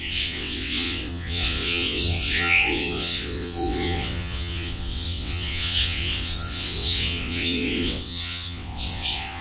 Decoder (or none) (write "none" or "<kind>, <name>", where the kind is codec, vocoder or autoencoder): vocoder, WaveNeXt